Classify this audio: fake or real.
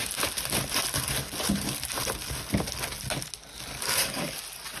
real